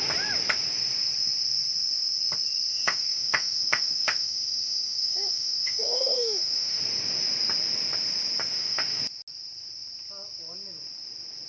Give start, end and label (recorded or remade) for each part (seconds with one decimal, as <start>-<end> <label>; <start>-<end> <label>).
0.0-2.7 recorded; 2.7-6.8 remade; 6.8-8.5 recorded; 8.5-9.0 remade; 9.0-11.5 recorded